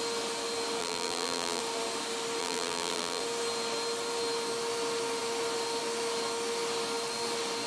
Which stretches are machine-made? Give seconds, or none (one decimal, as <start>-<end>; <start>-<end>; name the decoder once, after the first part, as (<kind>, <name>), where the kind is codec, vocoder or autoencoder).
0.8-1.6 (vocoder, BigVGAN v2); 2.4-3.2